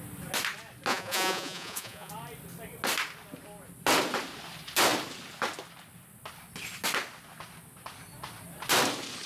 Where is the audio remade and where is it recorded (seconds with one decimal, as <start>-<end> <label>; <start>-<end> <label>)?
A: 0.0-0.9 recorded; 0.9-2.1 remade; 2.1-9.3 recorded